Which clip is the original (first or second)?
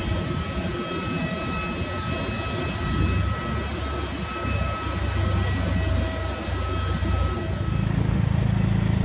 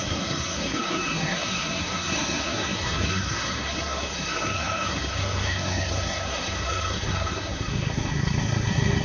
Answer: first